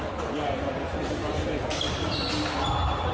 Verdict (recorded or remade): recorded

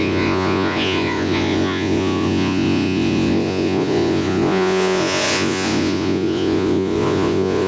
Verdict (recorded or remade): remade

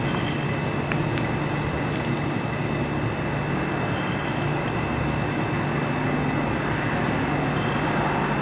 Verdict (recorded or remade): recorded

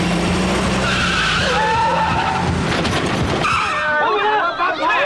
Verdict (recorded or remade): recorded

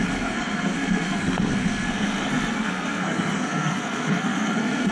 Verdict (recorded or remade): remade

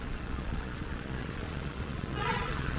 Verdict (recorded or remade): remade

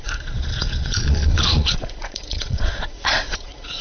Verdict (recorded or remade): remade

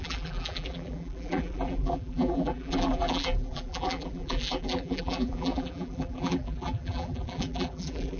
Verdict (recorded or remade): remade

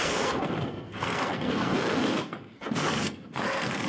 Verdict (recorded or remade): remade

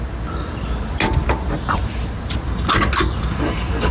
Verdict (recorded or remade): recorded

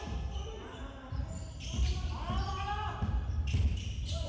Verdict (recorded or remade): recorded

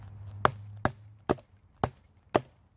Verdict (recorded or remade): recorded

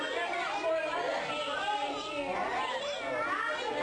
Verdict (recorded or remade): recorded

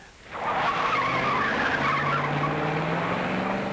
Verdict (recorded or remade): recorded